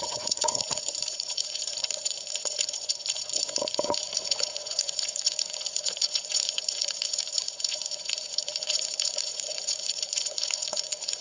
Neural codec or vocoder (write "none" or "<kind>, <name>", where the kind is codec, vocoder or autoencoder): vocoder, Vocos